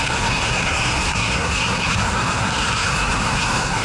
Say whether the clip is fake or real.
fake